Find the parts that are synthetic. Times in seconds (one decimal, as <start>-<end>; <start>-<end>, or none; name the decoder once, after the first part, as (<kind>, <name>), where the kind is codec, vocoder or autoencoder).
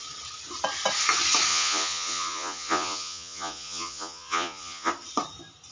1.5-4.9 (vocoder, Vocos)